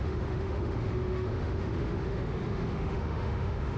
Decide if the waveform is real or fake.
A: fake